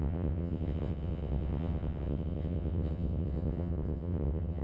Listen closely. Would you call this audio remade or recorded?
remade